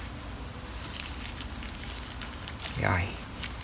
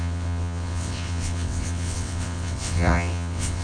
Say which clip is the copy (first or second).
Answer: second